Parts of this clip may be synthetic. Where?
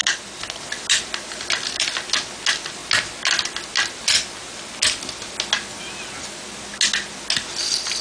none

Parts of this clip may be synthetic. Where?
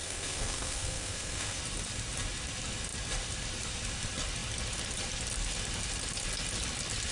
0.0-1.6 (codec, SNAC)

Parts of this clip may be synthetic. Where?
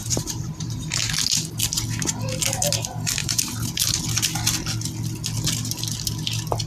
0.0-1.0 (vocoder, BigVGAN v2); 3.2-4.0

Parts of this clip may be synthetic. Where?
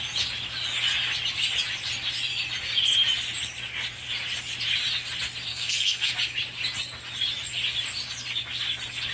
5.5-6.1 (codec, SNAC)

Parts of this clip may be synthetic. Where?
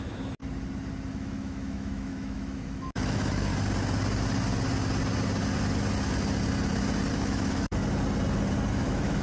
0.0-0.4 (autoencoder, DAC-VAE); 1.1-3.5; 7.1-7.8; 8.7-9.2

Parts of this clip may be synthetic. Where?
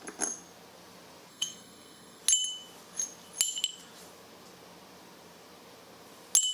1.3-2.2 (codec, SNAC)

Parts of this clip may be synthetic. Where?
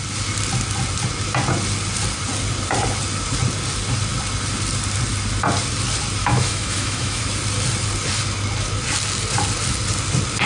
6.2-7.2 (autoencoder, DAC-VAE)